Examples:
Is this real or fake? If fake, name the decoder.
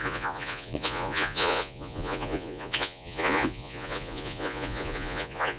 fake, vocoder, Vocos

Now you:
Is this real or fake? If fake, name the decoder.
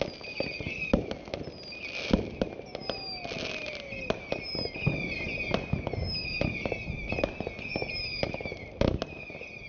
real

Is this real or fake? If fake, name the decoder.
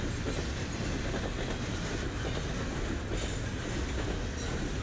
real